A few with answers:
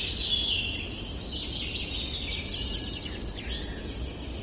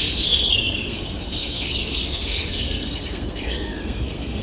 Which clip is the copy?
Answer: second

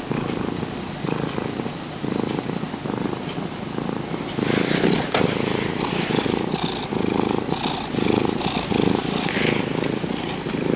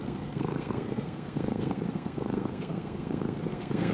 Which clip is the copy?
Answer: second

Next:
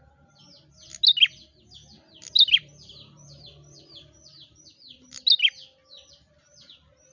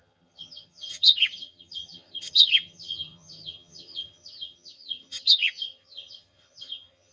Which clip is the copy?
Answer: second